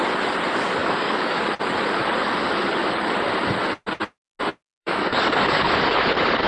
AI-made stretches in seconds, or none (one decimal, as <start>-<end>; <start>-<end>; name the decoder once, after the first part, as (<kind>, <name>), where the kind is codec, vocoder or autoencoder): 0.8-1.4 (codec, DAC); 4.8-5.7

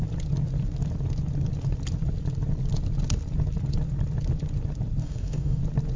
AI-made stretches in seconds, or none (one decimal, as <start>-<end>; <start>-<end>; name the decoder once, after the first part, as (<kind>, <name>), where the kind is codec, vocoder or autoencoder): 5.0-5.6 (codec, DAC)

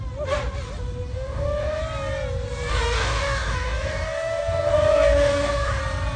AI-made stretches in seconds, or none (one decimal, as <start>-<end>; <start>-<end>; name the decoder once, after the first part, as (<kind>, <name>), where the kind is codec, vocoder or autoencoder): 1.1-1.8 (codec, DAC); 2.7-5.8

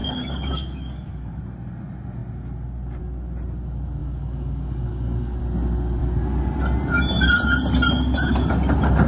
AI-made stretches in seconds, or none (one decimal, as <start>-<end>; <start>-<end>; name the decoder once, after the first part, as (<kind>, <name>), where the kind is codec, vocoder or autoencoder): 0.0-1.4 (codec, DAC); 4.0-5.4

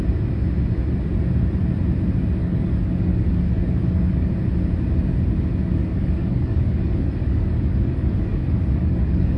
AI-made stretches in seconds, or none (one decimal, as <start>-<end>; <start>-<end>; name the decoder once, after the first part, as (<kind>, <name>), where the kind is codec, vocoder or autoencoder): 2.4-4.3 (codec, DAC); 5.8-9.4

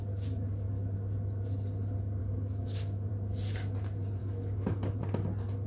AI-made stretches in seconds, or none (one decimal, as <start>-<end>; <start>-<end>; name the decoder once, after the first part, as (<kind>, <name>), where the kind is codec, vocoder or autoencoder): 2.2-3.1 (codec, DAC); 4.2-5.0

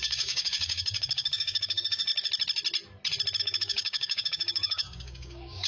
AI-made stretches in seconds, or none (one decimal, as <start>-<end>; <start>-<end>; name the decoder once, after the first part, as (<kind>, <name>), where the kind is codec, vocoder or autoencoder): 0.0-2.1 (codec, DAC); 3.4-5.7

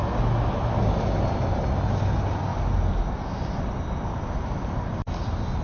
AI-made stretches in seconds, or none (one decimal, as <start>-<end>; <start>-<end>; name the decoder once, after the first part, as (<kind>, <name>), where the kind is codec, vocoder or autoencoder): none